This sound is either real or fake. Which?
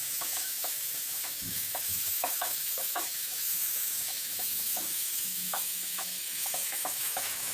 fake